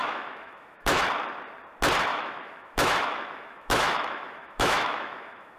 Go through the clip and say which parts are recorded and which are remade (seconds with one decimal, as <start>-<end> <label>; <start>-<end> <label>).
0.0-1.0 remade; 1.0-2.1 recorded; 2.1-5.6 remade